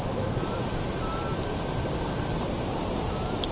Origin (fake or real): real